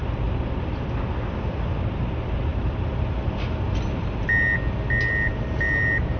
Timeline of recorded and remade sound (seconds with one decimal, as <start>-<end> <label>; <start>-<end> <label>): 0.0-6.2 recorded